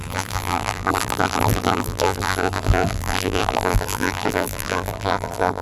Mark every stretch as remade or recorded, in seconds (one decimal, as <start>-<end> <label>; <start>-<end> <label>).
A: 0.0-5.6 remade

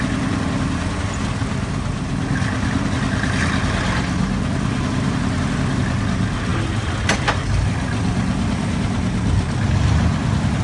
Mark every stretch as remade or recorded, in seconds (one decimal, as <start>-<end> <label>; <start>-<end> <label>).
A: 0.0-10.6 recorded

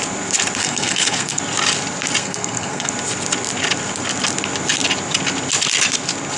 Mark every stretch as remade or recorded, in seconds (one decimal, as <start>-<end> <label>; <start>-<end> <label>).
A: 0.0-0.6 recorded; 0.6-1.4 remade; 1.4-2.2 recorded; 2.2-2.9 remade; 2.9-6.4 recorded

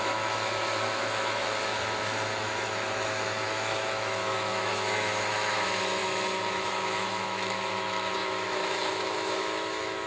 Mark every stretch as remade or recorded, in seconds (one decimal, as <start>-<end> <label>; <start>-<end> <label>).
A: 0.0-10.1 remade